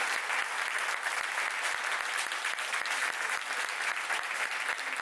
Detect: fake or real real